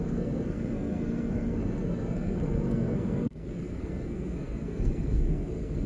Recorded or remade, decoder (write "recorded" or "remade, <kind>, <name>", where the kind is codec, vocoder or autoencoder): remade, codec, SNAC